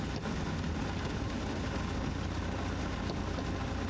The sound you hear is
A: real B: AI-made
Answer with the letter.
A